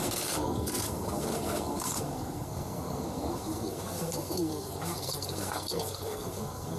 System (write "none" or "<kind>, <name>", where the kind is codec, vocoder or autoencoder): codec, SNAC